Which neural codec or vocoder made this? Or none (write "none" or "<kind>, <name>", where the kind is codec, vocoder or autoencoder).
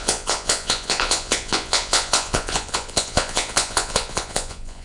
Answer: vocoder, Vocos